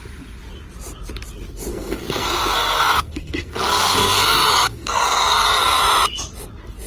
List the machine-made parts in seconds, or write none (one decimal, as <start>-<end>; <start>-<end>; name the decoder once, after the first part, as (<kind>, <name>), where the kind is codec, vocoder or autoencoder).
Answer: 1.7-5.8 (codec, SNAC)